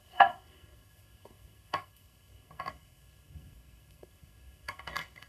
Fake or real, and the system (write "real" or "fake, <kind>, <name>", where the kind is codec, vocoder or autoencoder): fake, codec, SNAC